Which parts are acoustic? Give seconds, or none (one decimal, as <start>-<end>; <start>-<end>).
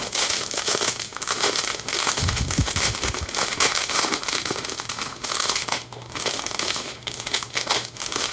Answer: none